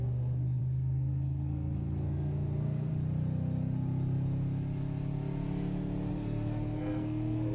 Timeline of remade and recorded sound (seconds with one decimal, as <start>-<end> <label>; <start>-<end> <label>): 0.0-2.9 remade; 2.9-6.1 recorded; 6.1-7.5 remade